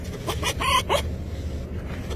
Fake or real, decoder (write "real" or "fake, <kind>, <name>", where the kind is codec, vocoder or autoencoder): real